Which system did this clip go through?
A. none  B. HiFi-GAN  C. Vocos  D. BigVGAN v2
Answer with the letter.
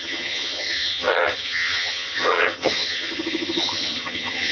B